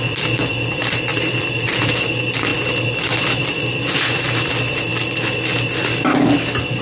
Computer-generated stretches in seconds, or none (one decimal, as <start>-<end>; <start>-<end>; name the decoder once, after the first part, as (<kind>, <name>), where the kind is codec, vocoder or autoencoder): 0.0-2.5 (vocoder, BigVGAN v2); 3.2-4.9